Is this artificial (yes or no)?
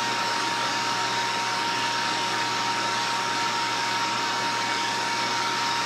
yes